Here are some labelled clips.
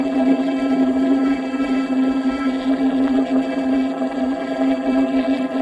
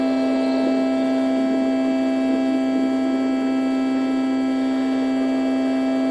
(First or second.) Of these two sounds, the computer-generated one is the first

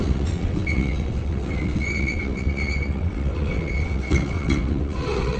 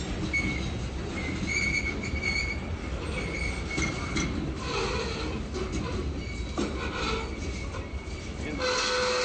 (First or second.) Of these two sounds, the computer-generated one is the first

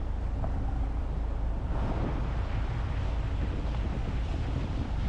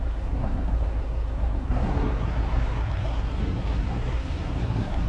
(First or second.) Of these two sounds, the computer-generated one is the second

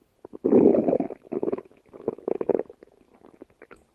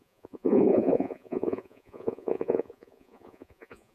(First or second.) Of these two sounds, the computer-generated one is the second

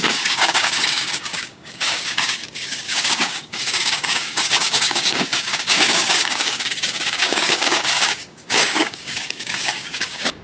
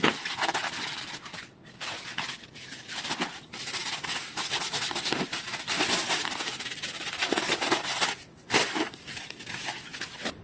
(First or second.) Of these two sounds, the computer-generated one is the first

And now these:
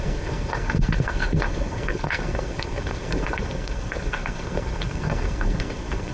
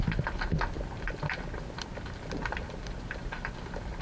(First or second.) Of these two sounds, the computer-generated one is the first